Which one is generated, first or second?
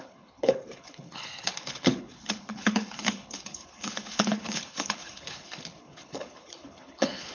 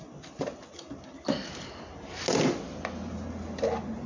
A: first